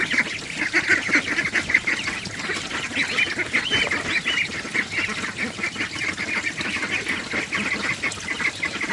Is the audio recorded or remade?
recorded